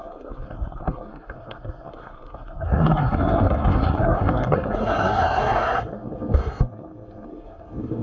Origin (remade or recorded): remade